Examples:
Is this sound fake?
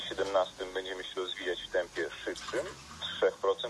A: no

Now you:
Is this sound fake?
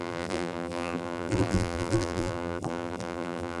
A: yes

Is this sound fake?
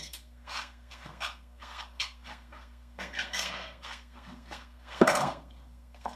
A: yes